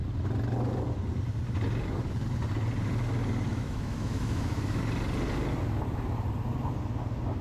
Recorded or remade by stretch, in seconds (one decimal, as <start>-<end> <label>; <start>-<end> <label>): 0.0-3.5 recorded; 3.5-4.8 remade; 4.8-7.4 recorded